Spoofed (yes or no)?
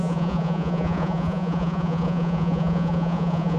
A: yes